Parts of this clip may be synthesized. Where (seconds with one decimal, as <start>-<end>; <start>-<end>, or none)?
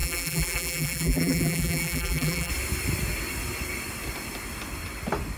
0.0-2.5